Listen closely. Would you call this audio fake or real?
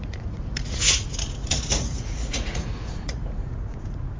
fake